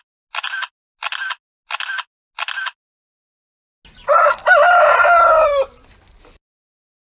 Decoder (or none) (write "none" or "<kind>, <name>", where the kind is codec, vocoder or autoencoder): none